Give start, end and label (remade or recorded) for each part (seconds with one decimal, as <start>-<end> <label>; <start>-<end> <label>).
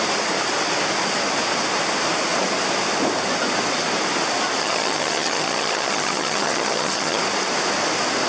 0.0-4.6 recorded; 4.6-7.2 remade; 7.2-8.3 recorded